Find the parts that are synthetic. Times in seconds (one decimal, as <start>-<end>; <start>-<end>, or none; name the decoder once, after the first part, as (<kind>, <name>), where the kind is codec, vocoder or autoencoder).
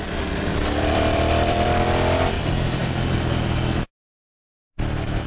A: 0.5-2.0 (vocoder, BigVGAN v2)